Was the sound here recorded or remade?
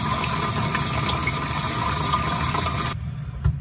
recorded